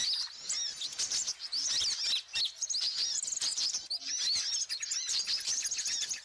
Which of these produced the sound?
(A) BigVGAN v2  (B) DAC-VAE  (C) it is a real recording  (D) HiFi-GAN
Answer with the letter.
A